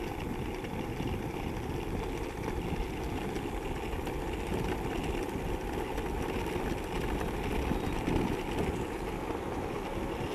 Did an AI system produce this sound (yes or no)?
no